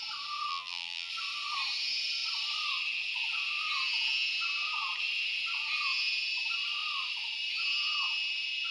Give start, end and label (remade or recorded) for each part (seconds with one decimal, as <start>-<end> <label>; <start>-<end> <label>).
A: 0.0-0.5 recorded; 0.5-1.1 remade; 1.1-8.7 recorded

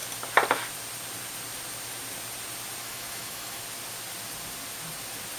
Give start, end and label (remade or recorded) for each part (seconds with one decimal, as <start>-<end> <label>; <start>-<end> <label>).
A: 0.0-2.8 recorded; 2.8-3.6 remade; 3.6-5.4 recorded